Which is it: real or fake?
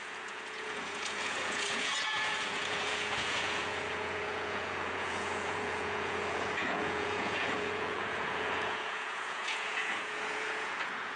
fake